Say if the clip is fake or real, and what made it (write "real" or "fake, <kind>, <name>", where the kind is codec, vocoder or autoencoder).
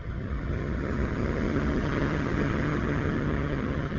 fake, vocoder, HiFi-GAN